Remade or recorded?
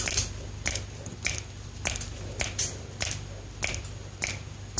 recorded